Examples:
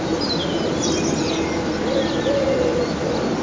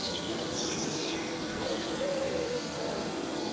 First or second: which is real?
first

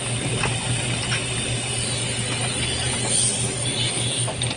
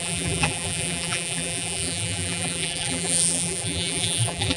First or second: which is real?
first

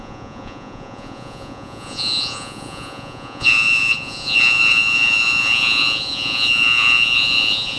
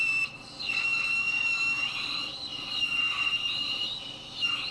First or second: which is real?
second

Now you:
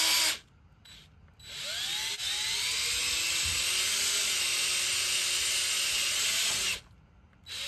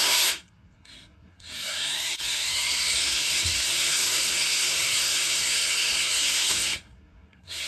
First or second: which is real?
first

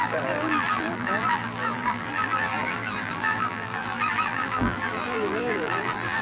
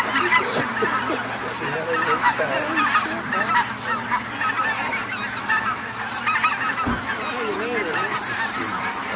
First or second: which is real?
second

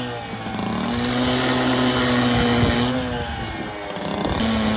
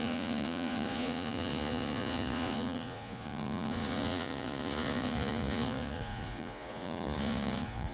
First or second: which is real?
first